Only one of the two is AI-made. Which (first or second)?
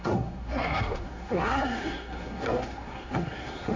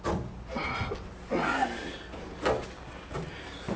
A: first